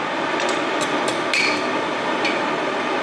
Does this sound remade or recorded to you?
recorded